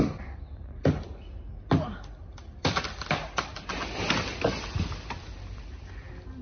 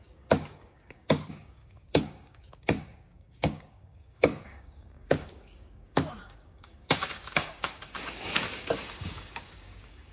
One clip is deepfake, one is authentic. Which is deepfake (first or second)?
second